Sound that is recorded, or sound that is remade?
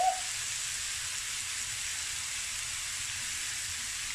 recorded